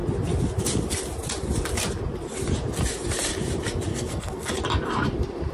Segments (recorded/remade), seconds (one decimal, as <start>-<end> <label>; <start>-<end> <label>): 0.0-3.9 recorded; 3.9-4.6 remade; 4.6-5.5 recorded